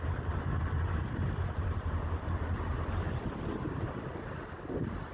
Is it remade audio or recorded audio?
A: recorded